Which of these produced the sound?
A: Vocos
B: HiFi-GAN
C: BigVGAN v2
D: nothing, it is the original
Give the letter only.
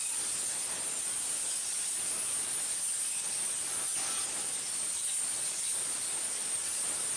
D